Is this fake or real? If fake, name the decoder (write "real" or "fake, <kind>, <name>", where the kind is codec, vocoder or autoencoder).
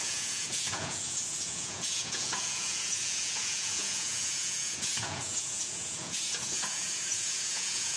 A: fake, vocoder, Vocos